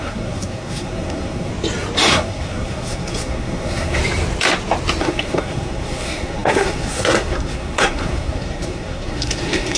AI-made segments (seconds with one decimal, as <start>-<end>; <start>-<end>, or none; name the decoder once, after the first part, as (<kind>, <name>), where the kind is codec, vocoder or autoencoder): 0.0-1.5 (codec, SNAC); 2.1-4.0; 5.0-9.8

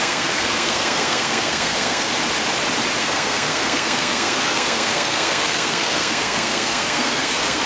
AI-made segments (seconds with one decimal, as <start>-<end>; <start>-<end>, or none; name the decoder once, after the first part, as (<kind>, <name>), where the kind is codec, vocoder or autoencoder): 0.0-2.1 (codec, SNAC); 3.0-7.7

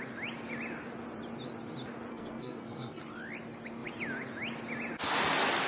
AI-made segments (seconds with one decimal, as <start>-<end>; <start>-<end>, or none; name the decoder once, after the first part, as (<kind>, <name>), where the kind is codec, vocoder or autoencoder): 2.1-3.0 (codec, SNAC)

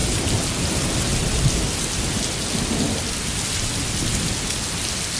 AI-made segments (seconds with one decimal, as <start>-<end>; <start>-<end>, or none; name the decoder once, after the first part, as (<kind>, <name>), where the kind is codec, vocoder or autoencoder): none

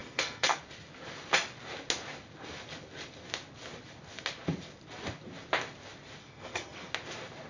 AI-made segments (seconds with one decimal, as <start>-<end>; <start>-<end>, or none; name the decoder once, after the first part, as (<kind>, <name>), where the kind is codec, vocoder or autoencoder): 0.0-0.6 (codec, SNAC); 6.2-6.9

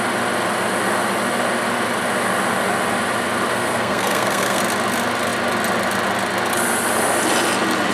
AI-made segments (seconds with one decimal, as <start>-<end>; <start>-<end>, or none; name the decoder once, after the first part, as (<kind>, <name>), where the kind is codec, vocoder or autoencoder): 3.5-4.6 (codec, SNAC)